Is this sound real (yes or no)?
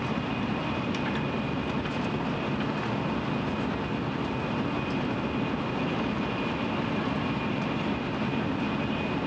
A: yes